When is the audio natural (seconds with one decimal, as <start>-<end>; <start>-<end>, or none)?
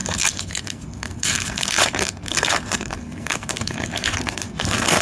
none